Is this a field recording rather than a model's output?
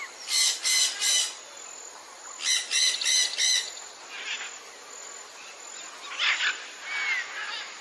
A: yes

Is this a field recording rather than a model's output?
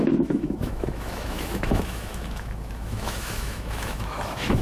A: no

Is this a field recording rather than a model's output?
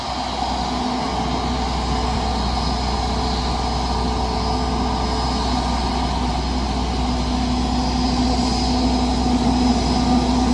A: yes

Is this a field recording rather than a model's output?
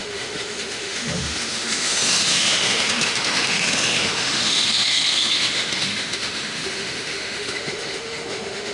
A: no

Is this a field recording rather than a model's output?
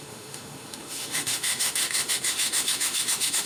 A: no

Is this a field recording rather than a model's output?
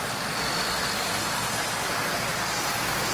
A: yes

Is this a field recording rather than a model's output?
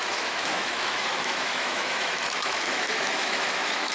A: no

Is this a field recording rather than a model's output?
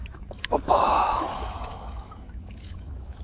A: no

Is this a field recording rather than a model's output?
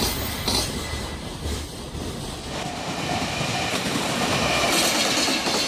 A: yes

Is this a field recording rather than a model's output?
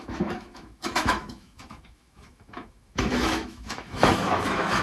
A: no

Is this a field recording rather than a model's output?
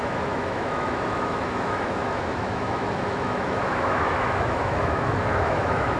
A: no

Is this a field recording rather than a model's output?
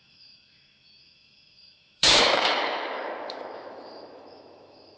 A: no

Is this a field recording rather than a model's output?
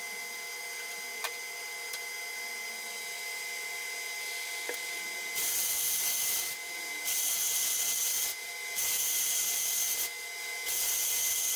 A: yes